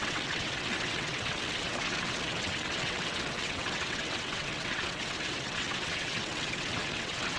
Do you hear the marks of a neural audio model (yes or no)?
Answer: yes